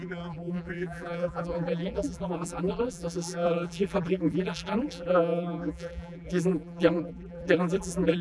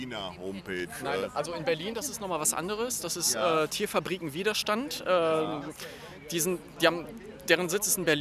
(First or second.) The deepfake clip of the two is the first